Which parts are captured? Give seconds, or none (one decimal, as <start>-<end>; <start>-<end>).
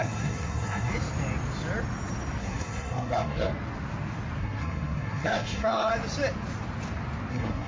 0.9-2.4; 3.5-4.4; 5.9-7.3